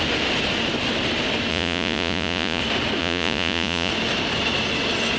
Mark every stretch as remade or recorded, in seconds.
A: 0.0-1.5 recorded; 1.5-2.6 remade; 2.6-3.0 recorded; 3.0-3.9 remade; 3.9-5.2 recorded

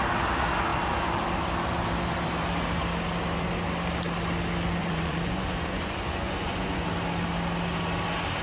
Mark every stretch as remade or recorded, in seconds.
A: 0.0-4.8 recorded; 4.8-6.9 remade; 6.9-8.4 recorded

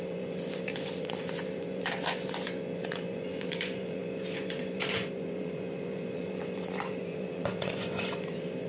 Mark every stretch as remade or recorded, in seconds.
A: 0.0-8.7 remade

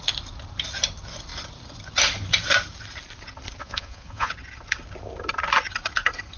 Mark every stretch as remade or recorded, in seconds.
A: 0.0-3.6 recorded; 3.6-4.3 remade; 4.3-6.4 recorded

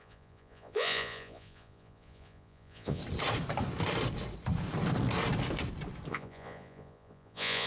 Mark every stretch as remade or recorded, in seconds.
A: 0.0-3.0 remade; 3.0-6.1 recorded; 6.1-7.7 remade

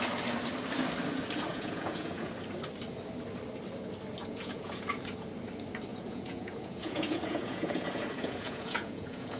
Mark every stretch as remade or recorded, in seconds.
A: 0.0-1.5 recorded; 1.5-2.3 remade; 2.3-4.2 recorded; 4.2-4.9 remade; 4.9-5.9 recorded; 5.9-9.4 remade

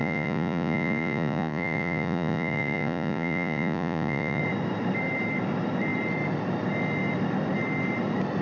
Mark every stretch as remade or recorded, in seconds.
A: 0.0-4.4 remade; 4.4-8.4 recorded